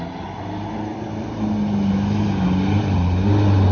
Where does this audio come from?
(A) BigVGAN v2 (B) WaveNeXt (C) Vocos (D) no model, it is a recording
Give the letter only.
D